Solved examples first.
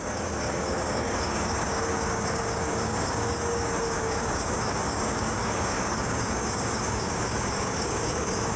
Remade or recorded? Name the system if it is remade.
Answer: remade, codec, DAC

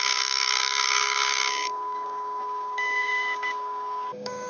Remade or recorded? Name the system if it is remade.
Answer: remade, codec, DAC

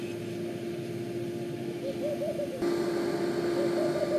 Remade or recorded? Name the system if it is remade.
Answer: recorded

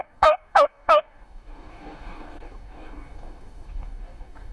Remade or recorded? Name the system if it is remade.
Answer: remade, codec, DAC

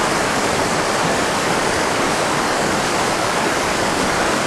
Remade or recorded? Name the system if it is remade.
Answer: remade, codec, DAC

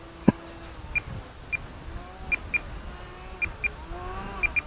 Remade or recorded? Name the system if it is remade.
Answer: recorded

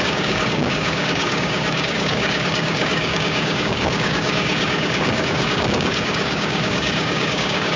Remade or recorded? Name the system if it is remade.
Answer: remade, codec, DAC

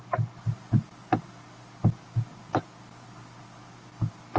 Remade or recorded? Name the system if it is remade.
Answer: recorded